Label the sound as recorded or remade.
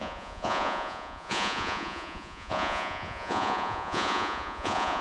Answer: remade